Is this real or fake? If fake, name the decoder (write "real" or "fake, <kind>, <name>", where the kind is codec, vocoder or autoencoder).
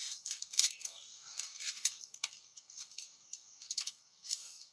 fake, codec, DAC